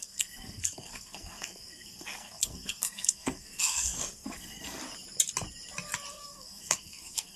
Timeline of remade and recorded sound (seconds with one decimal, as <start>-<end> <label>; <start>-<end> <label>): 0.0-4.8 remade; 4.8-6.1 recorded; 6.1-7.4 remade